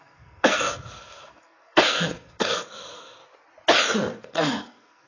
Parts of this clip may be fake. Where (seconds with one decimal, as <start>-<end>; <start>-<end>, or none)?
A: 0.0-3.2; 4.2-5.1